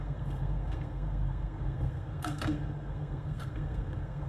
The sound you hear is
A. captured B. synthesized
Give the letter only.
B